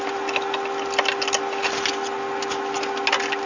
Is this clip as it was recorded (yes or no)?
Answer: yes